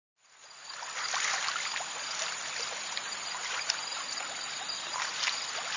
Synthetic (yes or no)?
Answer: yes